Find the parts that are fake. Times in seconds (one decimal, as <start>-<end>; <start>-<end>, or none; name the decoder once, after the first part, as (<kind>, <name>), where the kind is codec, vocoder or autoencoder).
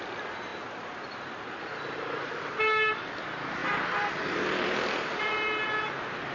3.6-5.3 (vocoder, BigVGAN v2)